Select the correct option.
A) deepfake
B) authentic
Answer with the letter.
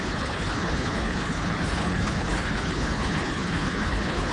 A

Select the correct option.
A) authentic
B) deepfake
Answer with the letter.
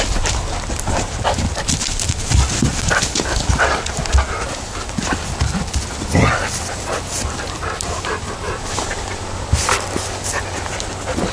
A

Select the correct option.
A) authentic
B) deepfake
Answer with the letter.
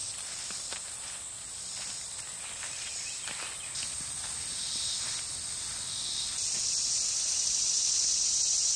A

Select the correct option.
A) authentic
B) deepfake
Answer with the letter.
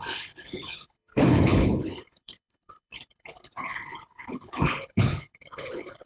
B